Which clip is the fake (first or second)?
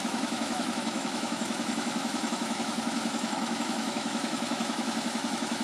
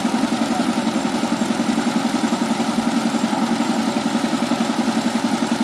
first